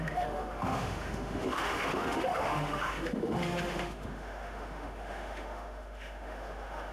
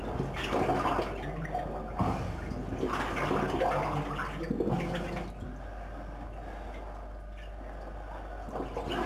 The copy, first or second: first